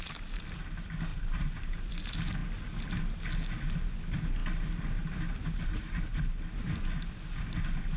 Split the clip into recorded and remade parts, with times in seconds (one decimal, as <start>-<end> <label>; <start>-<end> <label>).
0.0-1.1 recorded; 1.1-1.9 remade; 1.9-8.0 recorded